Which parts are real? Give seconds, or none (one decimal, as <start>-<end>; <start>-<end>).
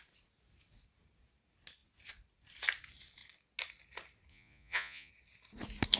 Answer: 0.0-4.3; 5.1-6.0